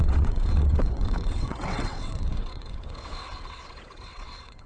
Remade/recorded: remade